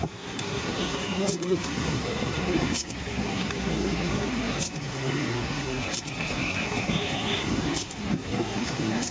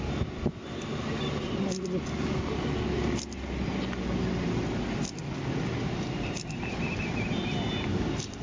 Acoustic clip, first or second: second